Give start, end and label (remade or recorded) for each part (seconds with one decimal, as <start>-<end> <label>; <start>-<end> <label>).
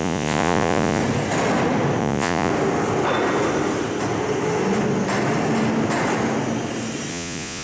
0.0-1.0 remade; 1.0-2.0 recorded; 2.0-2.5 remade; 2.5-7.1 recorded; 7.1-7.6 remade